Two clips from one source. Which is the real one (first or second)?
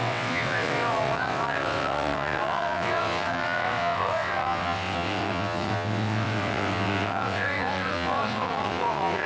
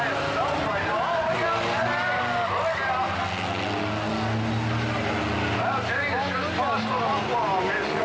second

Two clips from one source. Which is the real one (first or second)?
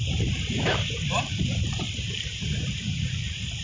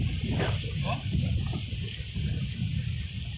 second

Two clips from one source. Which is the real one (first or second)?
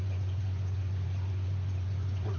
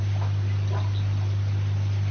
second